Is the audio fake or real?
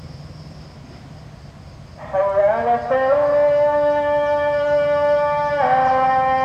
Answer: real